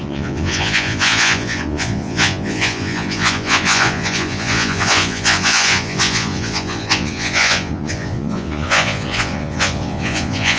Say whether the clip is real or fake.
fake